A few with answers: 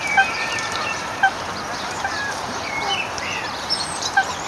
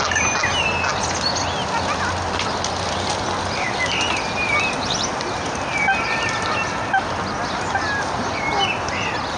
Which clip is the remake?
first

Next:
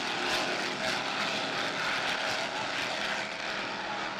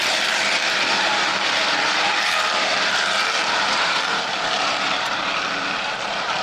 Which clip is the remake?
second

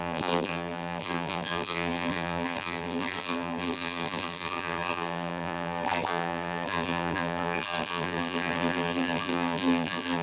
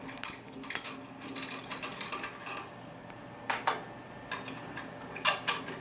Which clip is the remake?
first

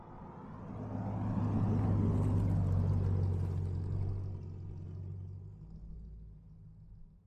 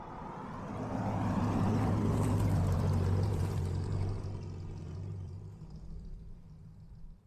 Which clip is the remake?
second